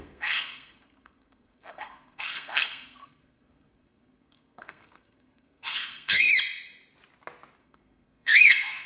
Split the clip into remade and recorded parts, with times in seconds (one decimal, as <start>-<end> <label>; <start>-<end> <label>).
0.0-6.3 remade; 6.3-7.6 recorded; 7.6-8.9 remade